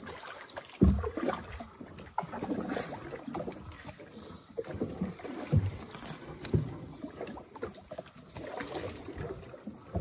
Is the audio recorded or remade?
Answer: recorded